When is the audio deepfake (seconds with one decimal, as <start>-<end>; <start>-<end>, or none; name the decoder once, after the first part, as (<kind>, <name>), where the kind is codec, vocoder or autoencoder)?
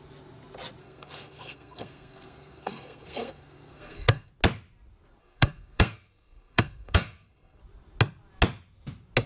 0.8-4.3 (codec, SNAC); 5.2-7.6